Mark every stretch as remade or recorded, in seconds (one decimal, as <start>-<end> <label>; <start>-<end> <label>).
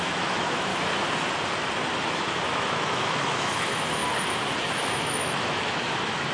0.0-0.7 remade; 0.7-2.1 recorded; 2.1-4.0 remade; 4.0-4.6 recorded; 4.6-6.3 remade